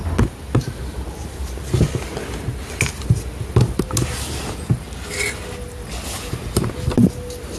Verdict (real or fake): real